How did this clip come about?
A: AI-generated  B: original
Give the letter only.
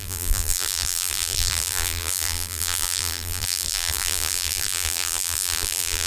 A